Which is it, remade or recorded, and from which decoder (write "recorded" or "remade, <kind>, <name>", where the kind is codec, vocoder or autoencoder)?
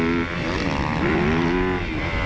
recorded